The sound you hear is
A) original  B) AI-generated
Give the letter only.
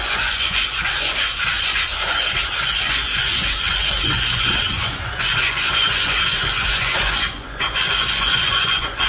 B